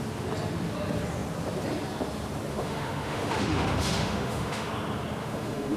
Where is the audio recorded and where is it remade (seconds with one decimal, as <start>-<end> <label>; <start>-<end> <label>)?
0.0-2.5 recorded; 2.5-4.7 remade; 4.7-5.2 recorded; 5.2-5.8 remade